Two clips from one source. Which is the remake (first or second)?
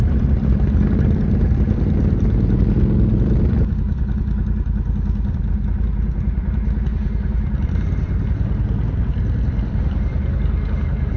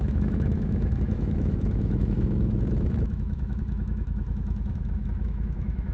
second